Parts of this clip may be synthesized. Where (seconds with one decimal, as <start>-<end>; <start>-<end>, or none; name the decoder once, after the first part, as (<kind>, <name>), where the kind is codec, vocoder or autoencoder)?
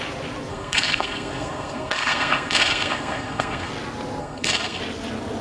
0.5-3.7 (codec, SNAC); 4.2-4.8